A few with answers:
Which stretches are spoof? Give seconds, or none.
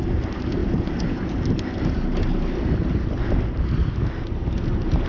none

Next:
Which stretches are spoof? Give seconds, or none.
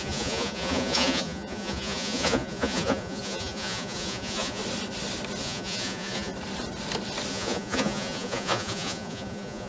0.0-4.6; 5.4-6.3; 7.3-9.7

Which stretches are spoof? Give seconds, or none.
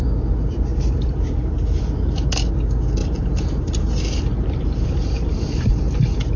0.7-1.8; 3.0-5.6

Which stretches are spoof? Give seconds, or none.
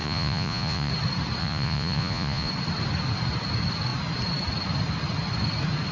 0.0-0.9; 1.4-2.5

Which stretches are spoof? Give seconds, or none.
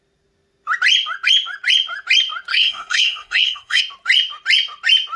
2.5-3.8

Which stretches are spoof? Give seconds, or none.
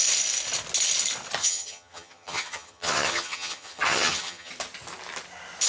1.4-4.5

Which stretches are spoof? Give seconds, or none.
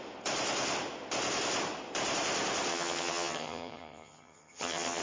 2.7-5.0